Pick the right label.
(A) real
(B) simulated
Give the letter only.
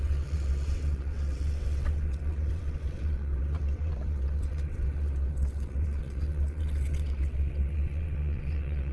B